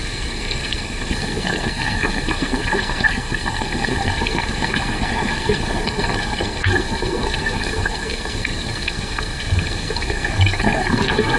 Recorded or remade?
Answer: remade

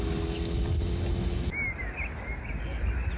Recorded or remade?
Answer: recorded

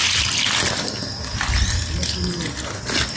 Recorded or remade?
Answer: recorded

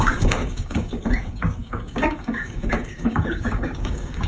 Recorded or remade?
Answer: remade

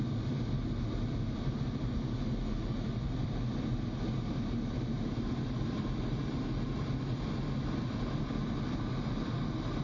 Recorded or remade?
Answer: recorded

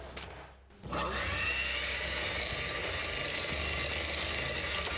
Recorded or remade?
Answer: recorded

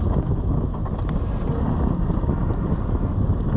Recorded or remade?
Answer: recorded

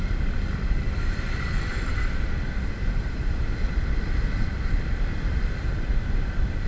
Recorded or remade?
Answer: remade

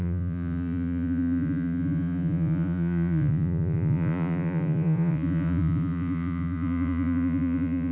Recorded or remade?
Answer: remade